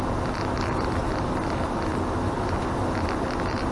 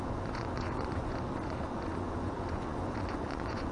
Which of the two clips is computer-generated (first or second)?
second